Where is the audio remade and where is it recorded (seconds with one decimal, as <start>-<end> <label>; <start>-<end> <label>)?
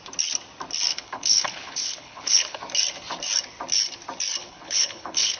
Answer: 0.0-0.9 recorded; 0.9-2.6 remade; 2.6-4.4 recorded; 4.4-5.4 remade